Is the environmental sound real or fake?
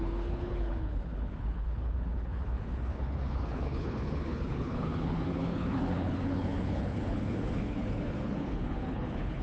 fake